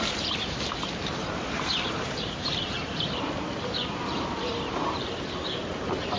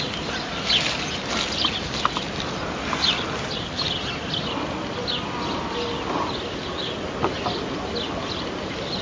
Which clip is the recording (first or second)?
second